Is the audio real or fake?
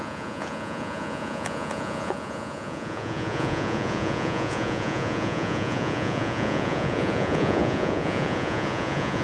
fake